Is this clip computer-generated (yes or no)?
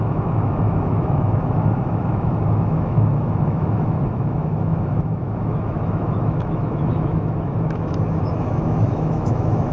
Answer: yes